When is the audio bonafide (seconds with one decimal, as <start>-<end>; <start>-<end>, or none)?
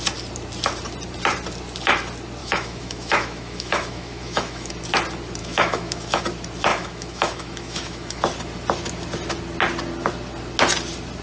0.0-2.4; 4.7-5.4; 6.2-6.7; 8.2-11.2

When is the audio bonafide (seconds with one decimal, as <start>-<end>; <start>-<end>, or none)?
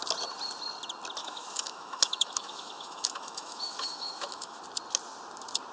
0.0-1.2; 4.6-5.7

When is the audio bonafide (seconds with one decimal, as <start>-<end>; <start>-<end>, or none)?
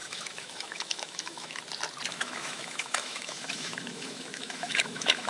1.6-2.1